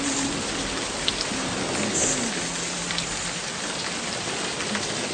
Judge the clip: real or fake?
real